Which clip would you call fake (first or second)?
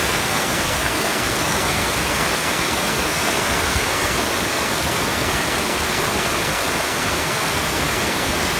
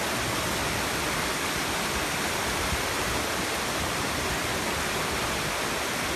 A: first